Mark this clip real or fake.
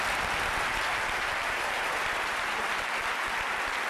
real